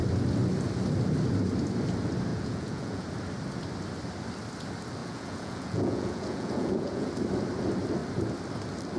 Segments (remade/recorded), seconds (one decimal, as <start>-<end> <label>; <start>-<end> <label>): 0.0-2.3 recorded; 2.3-3.1 remade; 3.1-5.0 recorded; 5.0-7.1 remade; 7.1-9.0 recorded